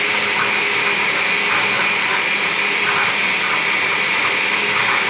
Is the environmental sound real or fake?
real